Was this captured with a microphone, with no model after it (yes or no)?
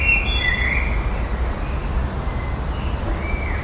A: yes